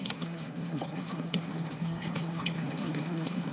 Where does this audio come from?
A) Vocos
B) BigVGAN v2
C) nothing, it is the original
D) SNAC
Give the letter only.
D